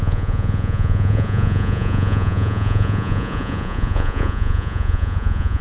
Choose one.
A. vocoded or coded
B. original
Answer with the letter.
A